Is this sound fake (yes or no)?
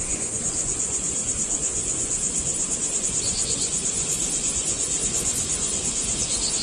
yes